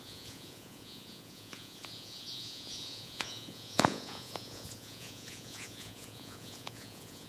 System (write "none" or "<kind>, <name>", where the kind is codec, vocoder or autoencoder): vocoder, Vocos